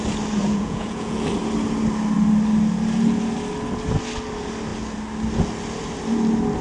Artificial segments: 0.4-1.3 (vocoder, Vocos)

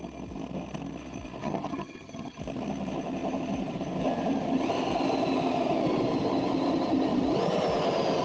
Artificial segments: 1.4-2.4 (vocoder, HiFi-GAN)